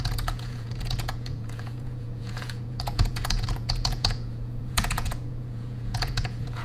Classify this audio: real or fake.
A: fake